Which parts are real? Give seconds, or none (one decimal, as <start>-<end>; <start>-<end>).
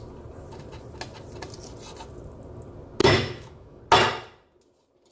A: 0.0-3.0; 3.8-5.1